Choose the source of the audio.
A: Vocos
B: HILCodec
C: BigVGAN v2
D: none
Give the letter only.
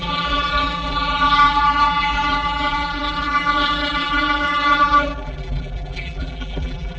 C